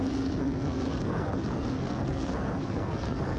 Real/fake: fake